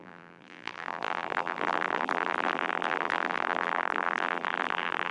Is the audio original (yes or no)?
no